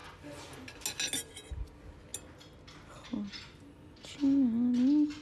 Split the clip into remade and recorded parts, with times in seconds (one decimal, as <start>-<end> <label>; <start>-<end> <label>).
0.0-5.2 recorded

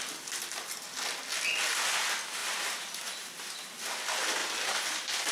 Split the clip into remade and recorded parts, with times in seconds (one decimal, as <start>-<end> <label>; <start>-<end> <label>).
0.0-2.4 recorded; 2.4-3.5 remade; 3.5-4.4 recorded; 4.4-5.3 remade

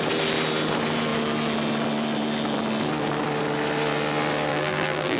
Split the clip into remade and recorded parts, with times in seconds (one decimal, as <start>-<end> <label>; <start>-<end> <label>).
0.0-4.5 recorded; 4.5-5.2 remade

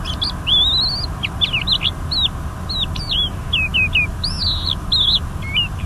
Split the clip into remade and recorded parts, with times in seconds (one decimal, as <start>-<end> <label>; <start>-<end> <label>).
0.0-5.9 recorded